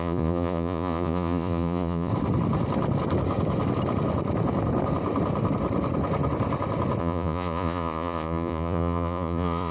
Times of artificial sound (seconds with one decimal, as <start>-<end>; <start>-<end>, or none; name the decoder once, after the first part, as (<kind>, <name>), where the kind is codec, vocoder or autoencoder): 0.0-2.1 (vocoder, Vocos); 7.0-9.7